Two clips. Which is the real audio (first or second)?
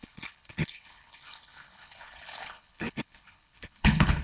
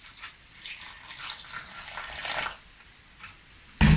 second